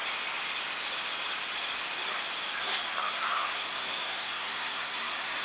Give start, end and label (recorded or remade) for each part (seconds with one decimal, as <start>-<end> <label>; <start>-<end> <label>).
0.0-2.6 recorded; 2.6-5.4 remade